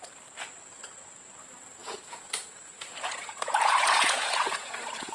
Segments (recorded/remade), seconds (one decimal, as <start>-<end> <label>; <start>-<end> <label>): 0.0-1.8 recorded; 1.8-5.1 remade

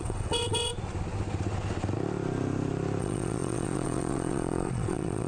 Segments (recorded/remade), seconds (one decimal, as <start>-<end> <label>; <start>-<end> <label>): 0.0-0.7 remade; 0.7-3.0 recorded; 3.0-5.3 remade

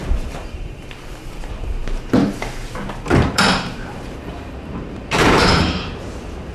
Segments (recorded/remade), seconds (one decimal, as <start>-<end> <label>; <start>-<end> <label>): 0.0-0.5 recorded; 0.5-6.5 remade

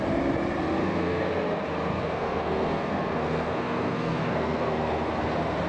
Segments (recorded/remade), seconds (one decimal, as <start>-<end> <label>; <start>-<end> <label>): 0.0-0.8 recorded; 0.8-1.3 remade; 1.3-1.9 recorded; 1.9-5.1 remade; 5.1-5.7 recorded

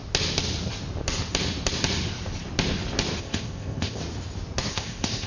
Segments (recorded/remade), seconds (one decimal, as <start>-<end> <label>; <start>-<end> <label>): 0.0-3.2 recorded; 3.2-4.0 remade; 4.0-4.7 recorded; 4.7-5.3 remade

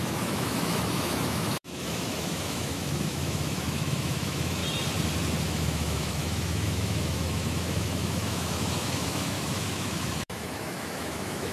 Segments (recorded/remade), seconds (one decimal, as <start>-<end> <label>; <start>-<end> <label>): 0.0-4.6 remade; 4.6-5.4 recorded; 5.4-11.5 remade